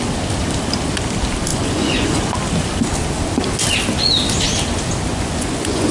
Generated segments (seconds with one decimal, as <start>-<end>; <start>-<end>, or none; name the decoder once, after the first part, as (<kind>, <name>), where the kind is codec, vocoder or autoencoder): 1.5-2.3 (vocoder, Vocos); 5.1-5.9